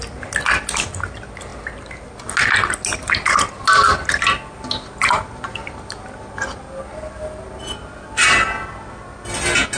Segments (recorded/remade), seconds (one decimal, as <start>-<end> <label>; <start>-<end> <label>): 0.0-9.8 recorded